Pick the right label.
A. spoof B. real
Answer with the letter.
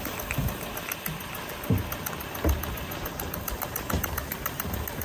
B